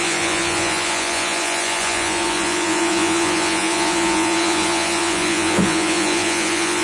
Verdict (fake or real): fake